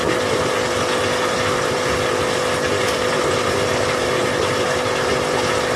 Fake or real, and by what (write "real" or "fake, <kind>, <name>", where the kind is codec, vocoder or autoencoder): real